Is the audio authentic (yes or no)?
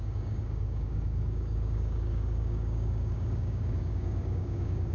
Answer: no